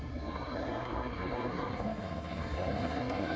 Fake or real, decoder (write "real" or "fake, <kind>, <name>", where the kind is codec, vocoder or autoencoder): fake, codec, SNAC